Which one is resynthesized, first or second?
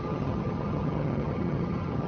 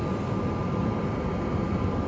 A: first